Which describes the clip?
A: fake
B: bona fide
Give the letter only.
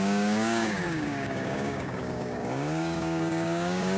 A